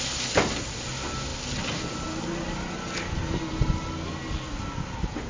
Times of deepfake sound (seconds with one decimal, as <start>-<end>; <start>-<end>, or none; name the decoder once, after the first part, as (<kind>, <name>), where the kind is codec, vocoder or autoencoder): none